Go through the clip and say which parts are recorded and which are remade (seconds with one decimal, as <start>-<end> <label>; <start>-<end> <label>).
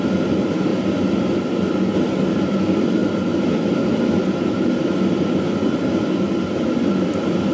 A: 0.0-0.7 remade; 0.7-2.3 recorded; 2.3-7.5 remade